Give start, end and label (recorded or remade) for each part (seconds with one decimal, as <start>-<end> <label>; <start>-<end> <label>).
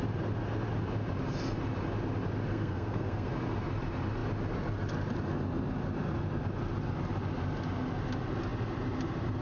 0.0-2.5 recorded; 2.5-3.3 remade; 3.3-9.4 recorded